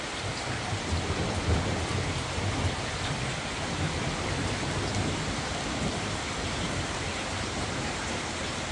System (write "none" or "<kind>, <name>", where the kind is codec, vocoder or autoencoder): none